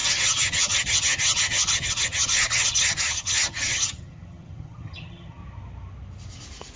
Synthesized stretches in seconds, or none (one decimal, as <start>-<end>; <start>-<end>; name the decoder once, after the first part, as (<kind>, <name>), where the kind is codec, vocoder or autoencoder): 0.0-5.4 (vocoder, HiFi-GAN)